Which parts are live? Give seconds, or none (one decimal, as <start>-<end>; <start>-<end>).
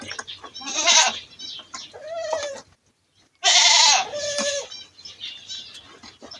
0.0-6.4